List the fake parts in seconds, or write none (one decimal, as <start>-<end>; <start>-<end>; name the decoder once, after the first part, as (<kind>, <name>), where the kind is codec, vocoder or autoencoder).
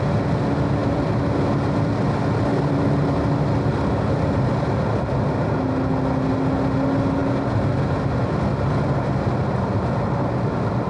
none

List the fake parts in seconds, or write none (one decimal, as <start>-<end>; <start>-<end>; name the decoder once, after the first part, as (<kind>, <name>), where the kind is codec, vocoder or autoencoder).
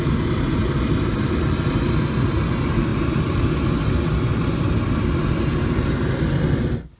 none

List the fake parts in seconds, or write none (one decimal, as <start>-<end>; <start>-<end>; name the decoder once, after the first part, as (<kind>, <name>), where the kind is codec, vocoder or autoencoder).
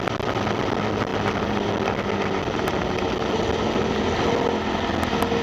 none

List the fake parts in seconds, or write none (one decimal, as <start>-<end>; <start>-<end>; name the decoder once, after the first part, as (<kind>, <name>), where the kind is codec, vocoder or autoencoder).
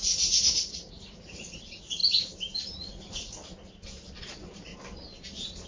0.0-2.0 (vocoder, Vocos); 2.9-3.4; 4.2-4.7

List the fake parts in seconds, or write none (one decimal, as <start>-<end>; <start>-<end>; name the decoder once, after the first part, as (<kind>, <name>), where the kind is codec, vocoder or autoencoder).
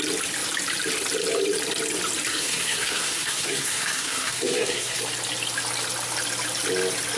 2.3-5.0 (codec, SNAC)